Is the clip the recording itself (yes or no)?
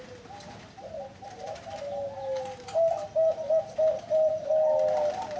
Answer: yes